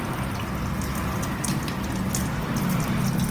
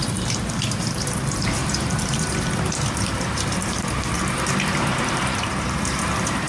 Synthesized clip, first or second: second